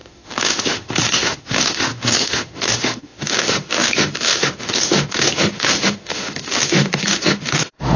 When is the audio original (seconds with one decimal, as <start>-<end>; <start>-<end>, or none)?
none